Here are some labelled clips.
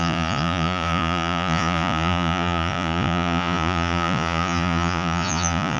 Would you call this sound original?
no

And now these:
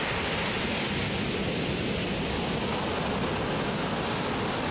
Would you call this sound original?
yes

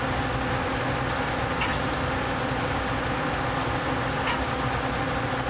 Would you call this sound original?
yes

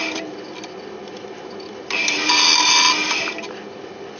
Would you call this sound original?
yes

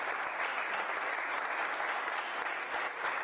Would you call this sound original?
yes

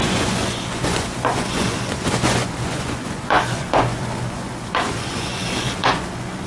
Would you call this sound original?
no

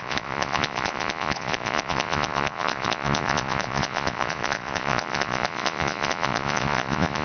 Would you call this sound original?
no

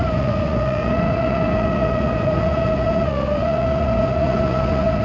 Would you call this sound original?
no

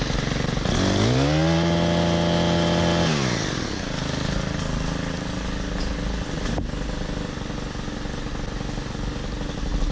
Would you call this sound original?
yes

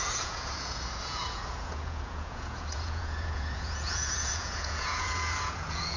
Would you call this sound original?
no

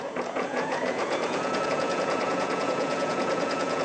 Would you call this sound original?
no